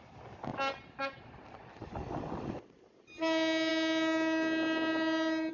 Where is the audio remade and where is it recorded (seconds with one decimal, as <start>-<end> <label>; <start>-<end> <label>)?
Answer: 0.0-5.5 recorded